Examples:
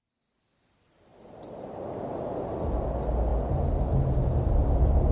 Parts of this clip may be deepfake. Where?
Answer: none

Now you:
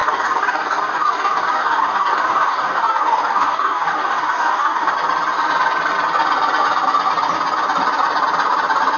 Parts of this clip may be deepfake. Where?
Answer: 0.0-4.9 (codec, DAC)

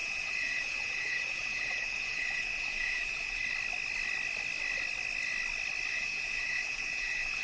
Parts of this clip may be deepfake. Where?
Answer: 0.0-3.4 (vocoder, Vocos); 5.9-7.4

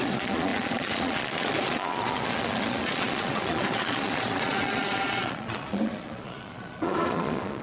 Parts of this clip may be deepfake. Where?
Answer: 0.0-7.6 (vocoder, Vocos)

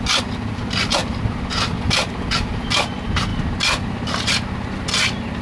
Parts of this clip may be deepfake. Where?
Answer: none

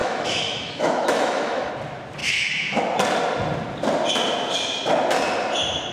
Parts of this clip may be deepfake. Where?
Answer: 0.0-1.7 (autoencoder, DAC-VAE); 2.2-2.8

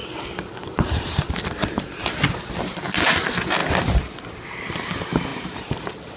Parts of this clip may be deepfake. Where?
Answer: 0.0-1.3 (vocoder, BigVGAN v2); 5.3-6.2